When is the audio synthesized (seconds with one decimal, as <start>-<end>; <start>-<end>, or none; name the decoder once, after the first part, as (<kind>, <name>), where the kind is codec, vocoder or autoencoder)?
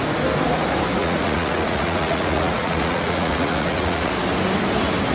1.0-4.1 (vocoder, Vocos)